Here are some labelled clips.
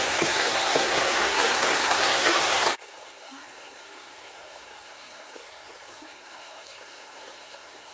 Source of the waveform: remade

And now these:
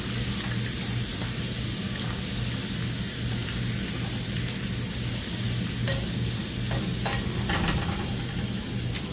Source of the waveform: recorded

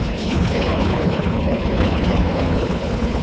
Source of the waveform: remade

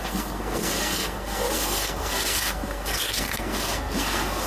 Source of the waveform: remade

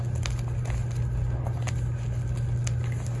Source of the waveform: recorded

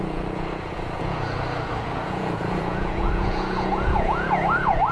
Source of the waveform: remade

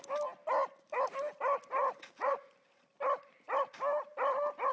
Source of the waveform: recorded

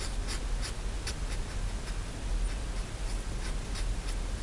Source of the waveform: recorded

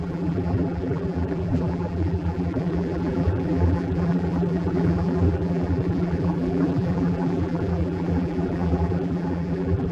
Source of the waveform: remade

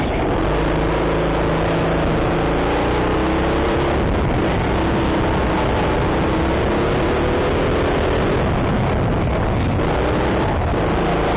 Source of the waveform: recorded